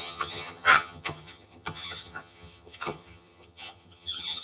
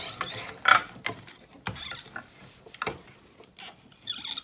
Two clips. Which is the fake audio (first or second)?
first